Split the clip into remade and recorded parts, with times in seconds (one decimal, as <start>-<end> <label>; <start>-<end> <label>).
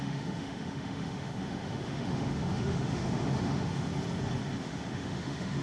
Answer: 0.0-3.9 remade; 3.9-4.6 recorded; 4.6-5.6 remade